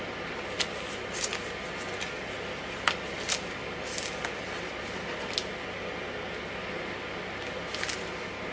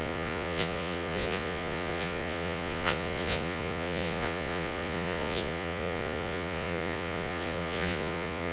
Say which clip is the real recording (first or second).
first